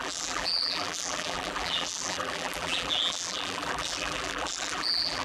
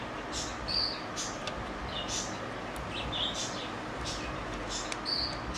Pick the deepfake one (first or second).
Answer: first